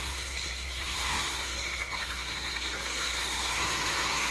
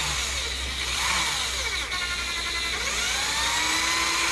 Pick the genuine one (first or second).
second